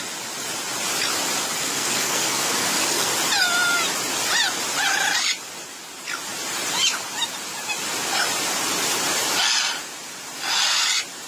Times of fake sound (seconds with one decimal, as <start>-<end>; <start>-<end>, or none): 1.6-3.1